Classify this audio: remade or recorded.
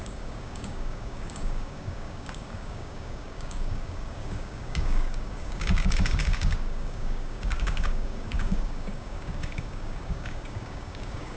remade